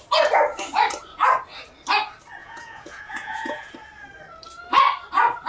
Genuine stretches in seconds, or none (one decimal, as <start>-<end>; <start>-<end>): 0.0-2.4; 3.7-5.5